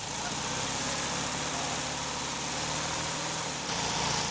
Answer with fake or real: real